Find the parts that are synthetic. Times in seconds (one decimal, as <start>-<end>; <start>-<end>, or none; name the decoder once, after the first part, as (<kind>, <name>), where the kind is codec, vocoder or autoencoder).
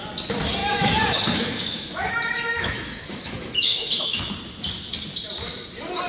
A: 0.6-4.3 (autoencoder, DAC-VAE)